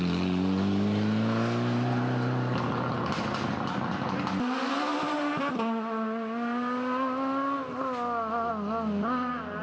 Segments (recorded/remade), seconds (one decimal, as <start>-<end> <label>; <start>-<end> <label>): 0.0-9.6 recorded